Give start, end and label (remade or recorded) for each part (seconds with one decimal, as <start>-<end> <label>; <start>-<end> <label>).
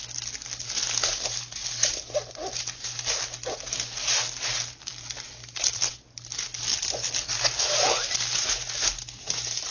0.0-9.7 recorded